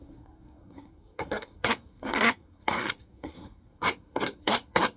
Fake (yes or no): yes